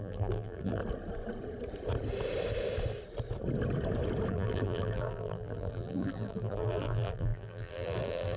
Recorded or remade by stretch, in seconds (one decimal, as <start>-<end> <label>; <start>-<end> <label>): 0.0-0.8 remade; 0.8-4.3 recorded; 4.3-8.4 remade